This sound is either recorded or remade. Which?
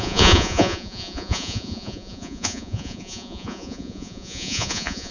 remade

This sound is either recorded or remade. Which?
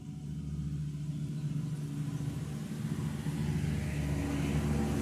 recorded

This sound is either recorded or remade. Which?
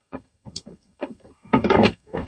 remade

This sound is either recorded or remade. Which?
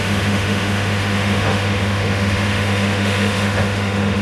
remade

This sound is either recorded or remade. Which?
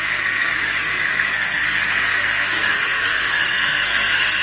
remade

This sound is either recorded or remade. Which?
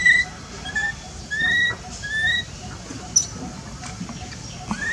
recorded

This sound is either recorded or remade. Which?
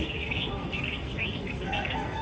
remade